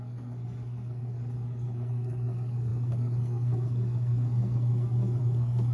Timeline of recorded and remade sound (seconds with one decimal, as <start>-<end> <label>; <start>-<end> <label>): 0.0-5.7 remade

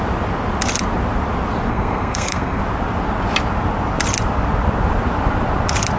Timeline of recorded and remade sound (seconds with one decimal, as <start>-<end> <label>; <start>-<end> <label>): 0.0-1.7 recorded; 1.7-2.6 remade; 2.6-6.0 recorded

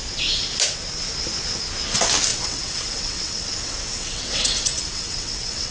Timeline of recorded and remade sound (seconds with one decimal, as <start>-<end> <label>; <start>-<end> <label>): 0.0-2.3 recorded; 2.3-5.7 remade

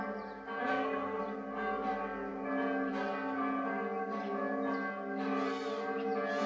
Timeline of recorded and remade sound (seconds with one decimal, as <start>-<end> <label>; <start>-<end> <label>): 0.0-0.6 recorded; 0.6-1.2 remade; 1.2-6.5 recorded

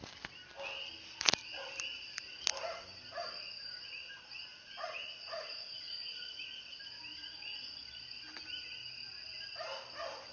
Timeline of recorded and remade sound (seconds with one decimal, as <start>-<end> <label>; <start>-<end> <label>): 0.0-4.5 recorded; 4.5-6.4 remade; 6.4-10.3 recorded

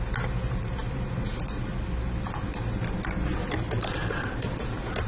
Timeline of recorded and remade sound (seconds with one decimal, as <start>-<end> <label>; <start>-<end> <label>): 0.0-5.1 recorded